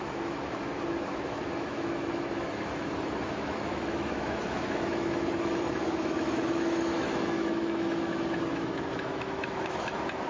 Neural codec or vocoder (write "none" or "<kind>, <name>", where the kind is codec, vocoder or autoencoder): autoencoder, DAC-VAE